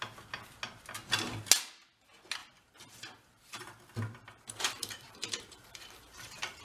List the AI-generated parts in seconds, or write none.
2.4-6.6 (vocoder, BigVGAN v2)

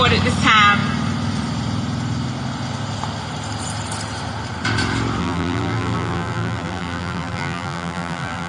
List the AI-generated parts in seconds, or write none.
5.2-8.5 (vocoder, BigVGAN v2)

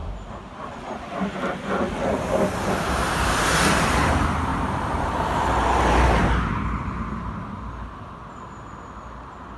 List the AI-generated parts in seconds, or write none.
0.0-0.7 (vocoder, BigVGAN v2); 4.5-7.3

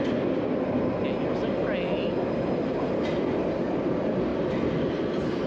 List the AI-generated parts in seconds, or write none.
none

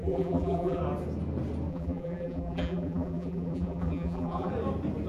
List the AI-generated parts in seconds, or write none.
0.0-0.8 (vocoder, BigVGAN v2); 1.7-4.5